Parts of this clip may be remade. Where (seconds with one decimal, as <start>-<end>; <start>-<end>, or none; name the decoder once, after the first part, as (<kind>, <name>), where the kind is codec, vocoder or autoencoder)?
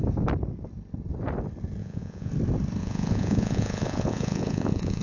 1.8-2.3 (vocoder, Vocos); 2.8-5.0